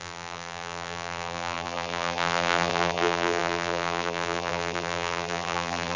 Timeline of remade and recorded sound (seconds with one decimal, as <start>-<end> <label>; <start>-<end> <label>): 0.0-6.0 remade